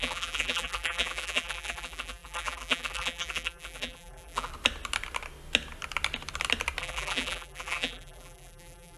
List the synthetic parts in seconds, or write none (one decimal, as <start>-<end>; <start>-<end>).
0.0-4.5; 6.8-9.0